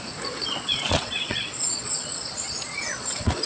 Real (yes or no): no